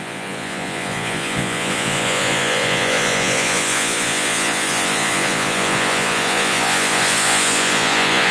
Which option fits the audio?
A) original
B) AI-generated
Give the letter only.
B